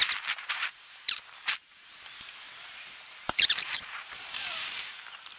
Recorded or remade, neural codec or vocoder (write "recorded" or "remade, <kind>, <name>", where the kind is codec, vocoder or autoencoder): remade, vocoder, BigVGAN v2